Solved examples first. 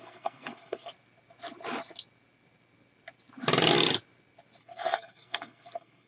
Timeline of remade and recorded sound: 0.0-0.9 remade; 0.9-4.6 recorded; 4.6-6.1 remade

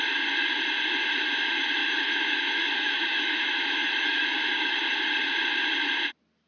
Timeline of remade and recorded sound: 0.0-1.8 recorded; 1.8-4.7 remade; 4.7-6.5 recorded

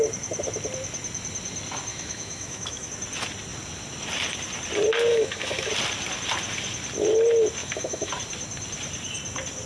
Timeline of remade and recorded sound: 0.0-1.9 recorded; 1.9-2.9 remade; 2.9-5.1 recorded; 5.1-5.7 remade; 5.7-7.6 recorded; 7.6-8.1 remade; 8.1-9.7 recorded

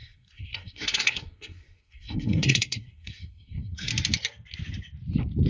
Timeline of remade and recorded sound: 0.0-3.9 remade; 3.9-5.5 recorded

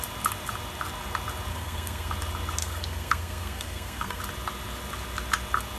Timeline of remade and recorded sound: 0.0-1.5 recorded; 1.5-2.1 remade; 2.1-2.6 recorded; 2.6-4.2 remade; 4.2-5.8 recorded

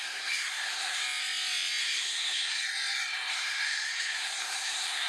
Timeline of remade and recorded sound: 0.0-1.0 remade; 1.0-1.8 recorded; 1.8-2.6 remade; 2.6-3.3 recorded; 3.3-5.1 remade